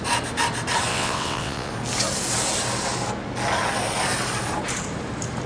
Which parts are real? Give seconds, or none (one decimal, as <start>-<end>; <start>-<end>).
0.0-0.9; 1.7-5.5